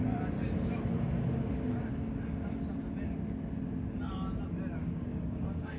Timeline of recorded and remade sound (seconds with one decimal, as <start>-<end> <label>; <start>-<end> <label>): 0.0-4.8 recorded; 4.8-5.8 remade